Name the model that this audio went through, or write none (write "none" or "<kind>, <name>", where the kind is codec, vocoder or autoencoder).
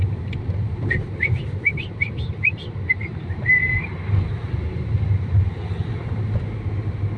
none